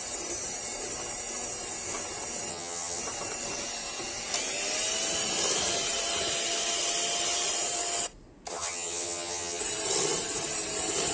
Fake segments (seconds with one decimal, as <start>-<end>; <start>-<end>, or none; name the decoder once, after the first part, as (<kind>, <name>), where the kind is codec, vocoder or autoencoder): 2.5-3.0 (vocoder, HiFi-GAN); 8.5-9.6